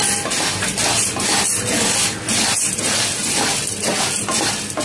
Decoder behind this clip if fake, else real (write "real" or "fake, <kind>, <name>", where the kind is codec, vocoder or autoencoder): real